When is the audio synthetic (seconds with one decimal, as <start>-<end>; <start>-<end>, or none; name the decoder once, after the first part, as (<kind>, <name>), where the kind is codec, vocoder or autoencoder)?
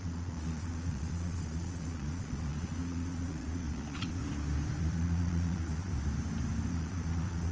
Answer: 0.0-4.2 (vocoder, Vocos); 4.8-5.9; 6.7-7.5